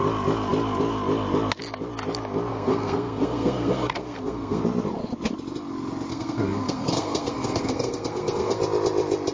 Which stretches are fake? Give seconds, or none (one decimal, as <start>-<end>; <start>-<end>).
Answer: 2.5-4.6; 6.1-8.6